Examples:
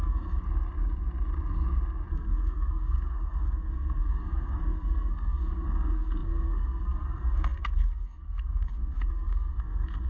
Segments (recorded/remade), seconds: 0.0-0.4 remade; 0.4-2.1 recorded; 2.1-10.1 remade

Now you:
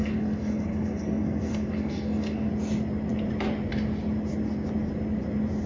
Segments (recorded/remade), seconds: 0.0-2.5 remade; 2.5-5.7 recorded

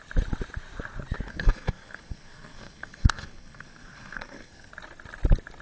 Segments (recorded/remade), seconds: 0.0-1.3 recorded; 1.3-4.7 remade; 4.7-5.6 recorded

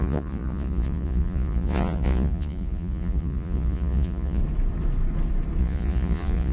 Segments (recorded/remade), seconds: 0.0-4.4 remade; 4.4-5.6 recorded; 5.6-6.5 remade

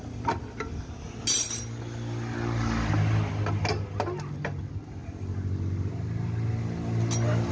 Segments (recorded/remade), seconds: 0.0-7.5 recorded

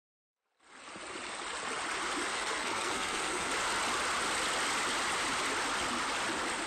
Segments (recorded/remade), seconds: 0.0-2.3 recorded; 2.3-3.5 remade; 3.5-6.7 recorded

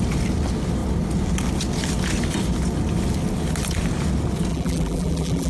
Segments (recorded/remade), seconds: 0.0-4.5 recorded; 4.5-5.5 remade